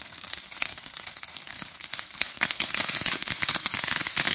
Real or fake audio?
fake